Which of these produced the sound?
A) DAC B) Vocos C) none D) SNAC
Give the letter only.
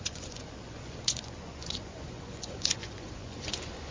B